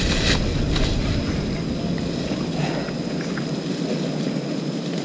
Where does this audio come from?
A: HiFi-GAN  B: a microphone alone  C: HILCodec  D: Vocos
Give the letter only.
B